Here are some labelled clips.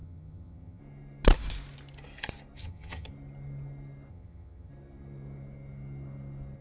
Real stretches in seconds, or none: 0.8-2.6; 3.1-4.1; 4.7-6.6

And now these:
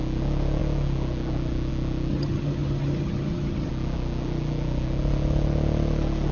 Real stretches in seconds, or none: 0.0-2.1; 3.7-6.3

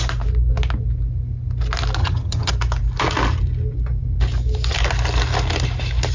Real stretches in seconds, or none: 0.0-2.0; 2.5-6.1

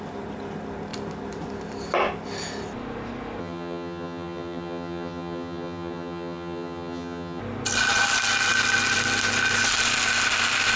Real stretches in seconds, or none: 0.0-3.4; 7.4-10.8

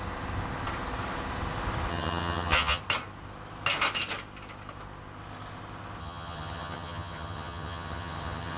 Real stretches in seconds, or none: 0.0-1.9; 2.8-6.0